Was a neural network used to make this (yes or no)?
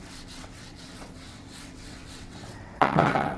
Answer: yes